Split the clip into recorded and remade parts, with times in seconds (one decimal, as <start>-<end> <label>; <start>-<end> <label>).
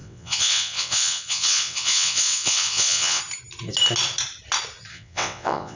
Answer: 0.0-3.2 remade; 3.2-4.9 recorded; 4.9-5.8 remade